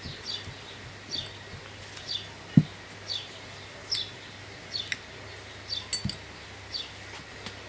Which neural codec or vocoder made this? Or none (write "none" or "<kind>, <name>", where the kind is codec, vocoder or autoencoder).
none